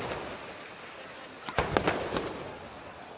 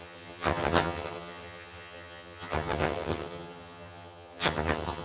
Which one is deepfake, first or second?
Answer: second